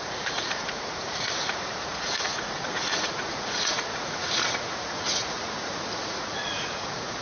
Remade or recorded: remade